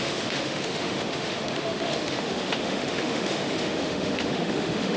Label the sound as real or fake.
fake